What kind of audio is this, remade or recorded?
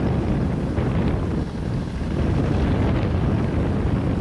recorded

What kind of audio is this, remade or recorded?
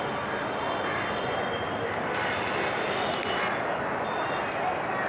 recorded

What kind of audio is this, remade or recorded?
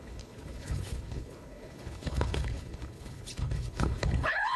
remade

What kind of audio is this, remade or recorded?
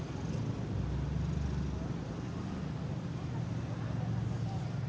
recorded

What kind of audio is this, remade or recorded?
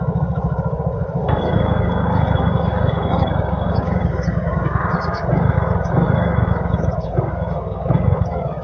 remade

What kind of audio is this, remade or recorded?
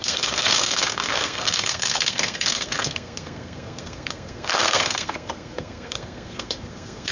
remade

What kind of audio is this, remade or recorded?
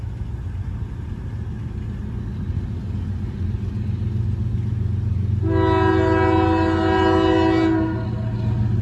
recorded